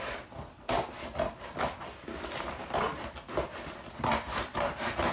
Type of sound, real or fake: real